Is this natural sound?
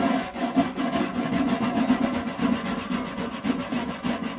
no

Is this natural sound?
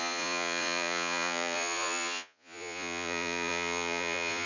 no